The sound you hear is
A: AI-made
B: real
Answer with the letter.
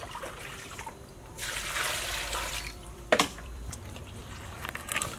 A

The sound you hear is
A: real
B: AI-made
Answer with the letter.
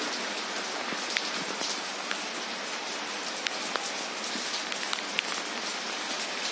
A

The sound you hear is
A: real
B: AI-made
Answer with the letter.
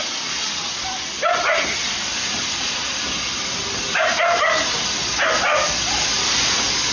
A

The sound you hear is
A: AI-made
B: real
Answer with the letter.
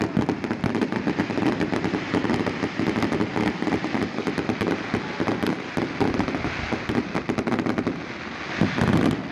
B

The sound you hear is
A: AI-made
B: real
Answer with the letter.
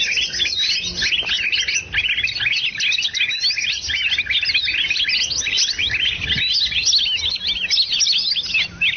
B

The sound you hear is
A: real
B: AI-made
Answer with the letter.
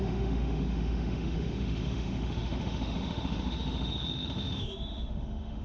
B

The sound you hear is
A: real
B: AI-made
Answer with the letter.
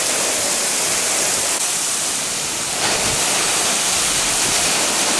B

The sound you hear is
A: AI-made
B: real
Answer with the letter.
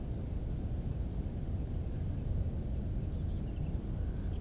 B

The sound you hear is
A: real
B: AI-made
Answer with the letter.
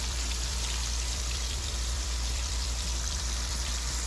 B